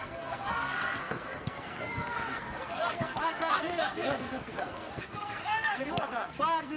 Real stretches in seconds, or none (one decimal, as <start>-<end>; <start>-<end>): none